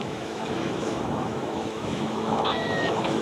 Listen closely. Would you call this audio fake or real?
fake